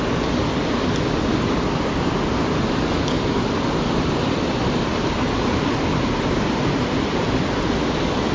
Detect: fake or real real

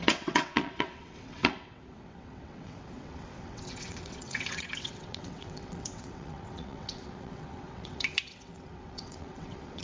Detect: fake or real fake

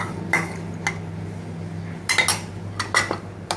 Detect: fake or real real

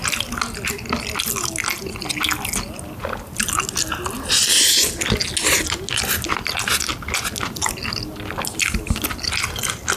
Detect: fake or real real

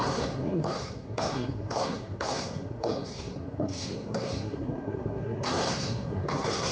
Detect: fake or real fake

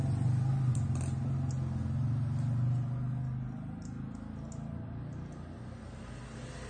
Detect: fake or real real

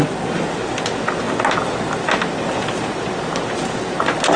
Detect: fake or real real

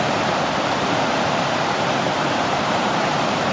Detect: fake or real fake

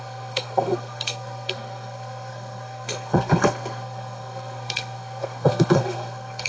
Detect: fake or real fake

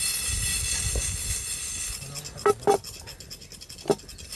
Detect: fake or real real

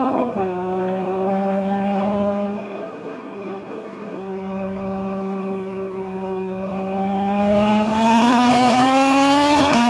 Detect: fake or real fake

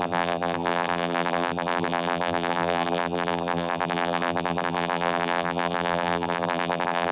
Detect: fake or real fake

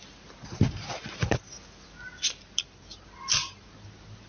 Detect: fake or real real